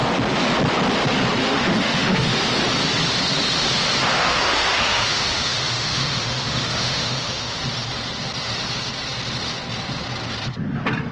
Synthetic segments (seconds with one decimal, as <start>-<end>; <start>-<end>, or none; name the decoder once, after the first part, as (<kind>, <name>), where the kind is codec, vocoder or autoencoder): 1.4-2.4 (autoencoder, DAC-VAE); 4.2-7.6